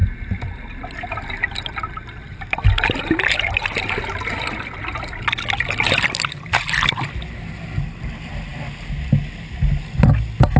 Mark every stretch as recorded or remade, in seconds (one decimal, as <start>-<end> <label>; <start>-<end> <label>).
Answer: 0.0-10.6 recorded